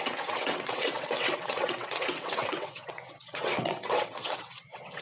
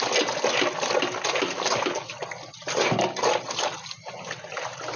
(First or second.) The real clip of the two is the second